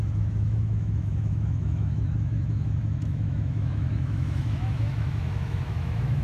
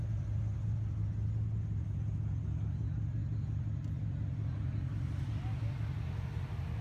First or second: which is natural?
second